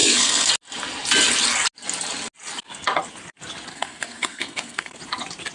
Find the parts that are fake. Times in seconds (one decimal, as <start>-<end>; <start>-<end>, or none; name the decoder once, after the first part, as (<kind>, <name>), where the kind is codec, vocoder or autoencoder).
0.0-0.5 (codec, SNAC); 3.7-5.0